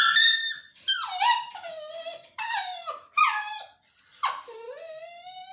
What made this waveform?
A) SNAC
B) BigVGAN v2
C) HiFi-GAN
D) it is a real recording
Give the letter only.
D